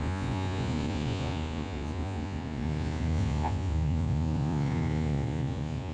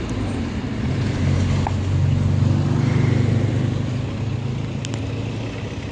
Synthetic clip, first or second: first